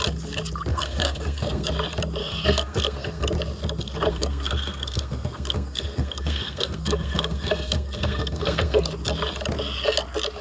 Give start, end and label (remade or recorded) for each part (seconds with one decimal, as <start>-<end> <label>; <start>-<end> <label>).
0.0-0.7 recorded; 0.7-1.7 remade; 1.7-2.2 recorded; 2.2-3.3 remade; 3.3-4.1 recorded; 4.1-8.9 remade; 8.9-10.4 recorded